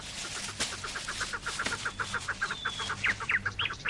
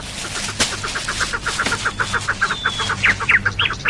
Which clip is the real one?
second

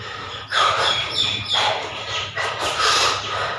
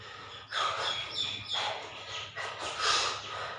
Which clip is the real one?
second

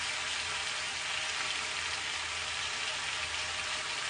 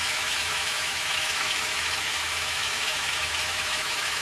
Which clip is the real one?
first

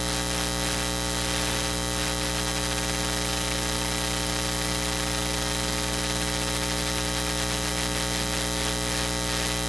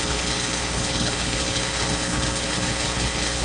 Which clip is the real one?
first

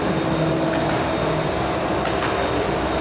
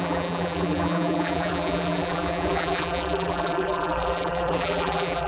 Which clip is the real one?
first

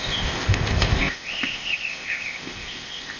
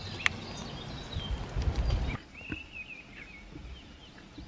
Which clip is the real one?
second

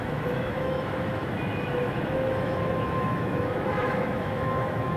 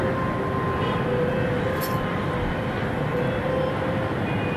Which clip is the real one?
second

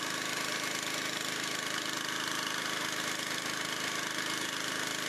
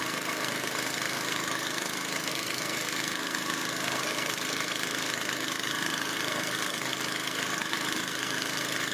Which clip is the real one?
first